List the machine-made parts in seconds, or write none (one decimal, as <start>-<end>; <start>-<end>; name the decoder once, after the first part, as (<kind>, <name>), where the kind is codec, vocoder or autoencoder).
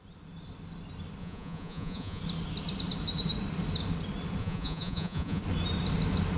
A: 1.2-2.2 (vocoder, Vocos); 4.4-5.4